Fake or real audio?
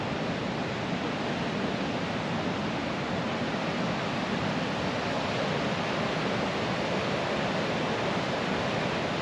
real